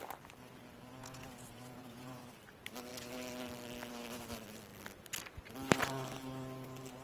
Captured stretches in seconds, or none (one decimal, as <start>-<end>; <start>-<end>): 0.0-1.0; 2.2-7.0